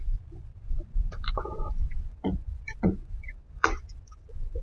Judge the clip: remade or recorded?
remade